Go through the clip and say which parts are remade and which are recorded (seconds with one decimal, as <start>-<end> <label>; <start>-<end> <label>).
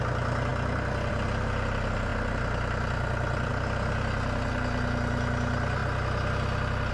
0.0-6.9 recorded